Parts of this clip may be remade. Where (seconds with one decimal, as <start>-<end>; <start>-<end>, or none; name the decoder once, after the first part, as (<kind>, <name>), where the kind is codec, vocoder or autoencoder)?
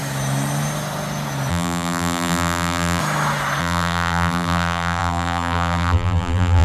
1.5-3.0 (vocoder, BigVGAN v2); 3.6-6.6